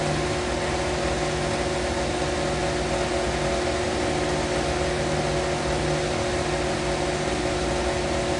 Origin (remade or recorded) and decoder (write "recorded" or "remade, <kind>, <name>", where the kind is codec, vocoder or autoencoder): recorded